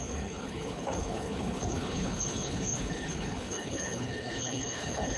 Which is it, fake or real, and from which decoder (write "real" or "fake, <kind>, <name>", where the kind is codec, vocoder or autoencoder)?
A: fake, codec, HILCodec